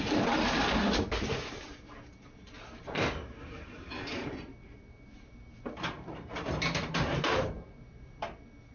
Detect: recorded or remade remade